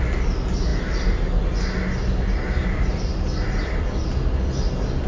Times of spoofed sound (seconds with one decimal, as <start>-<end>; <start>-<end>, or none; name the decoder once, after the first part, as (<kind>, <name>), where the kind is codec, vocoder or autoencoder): none